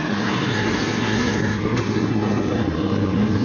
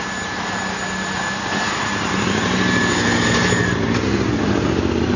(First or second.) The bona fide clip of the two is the second